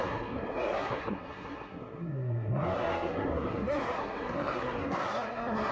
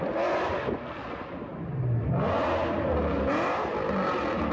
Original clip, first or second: second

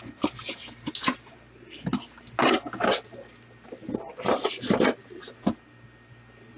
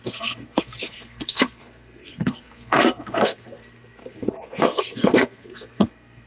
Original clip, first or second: first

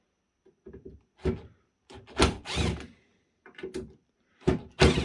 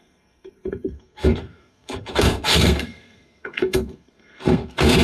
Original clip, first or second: first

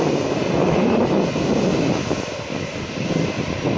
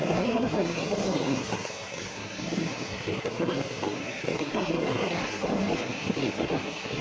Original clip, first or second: first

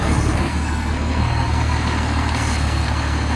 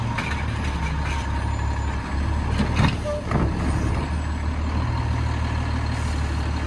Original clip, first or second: second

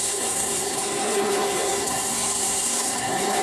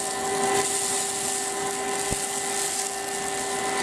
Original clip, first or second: second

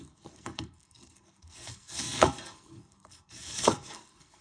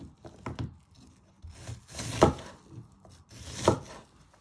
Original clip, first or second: second